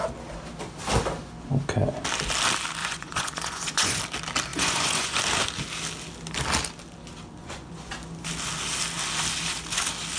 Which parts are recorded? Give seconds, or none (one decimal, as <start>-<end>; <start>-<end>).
0.0-2.8; 4.0-4.5; 5.2-7.4; 7.9-10.2